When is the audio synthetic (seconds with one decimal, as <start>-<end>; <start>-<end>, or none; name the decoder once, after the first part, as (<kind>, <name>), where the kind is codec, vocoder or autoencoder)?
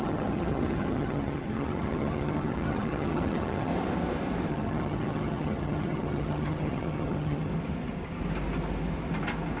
0.0-3.7 (vocoder, HiFi-GAN); 4.5-7.5